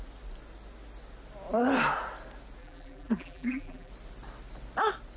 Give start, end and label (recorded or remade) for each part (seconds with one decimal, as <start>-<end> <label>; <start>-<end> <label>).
0.0-2.6 recorded; 2.6-3.9 remade; 3.9-5.2 recorded